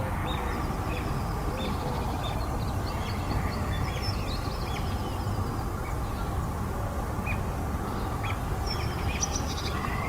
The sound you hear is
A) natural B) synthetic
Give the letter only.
A